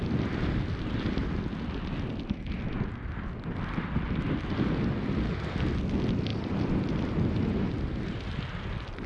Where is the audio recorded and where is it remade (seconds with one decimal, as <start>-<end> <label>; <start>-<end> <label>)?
0.0-6.3 recorded; 6.3-8.0 remade; 8.0-9.1 recorded